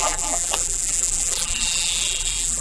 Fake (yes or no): yes